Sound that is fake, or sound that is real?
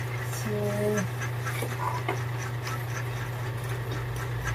real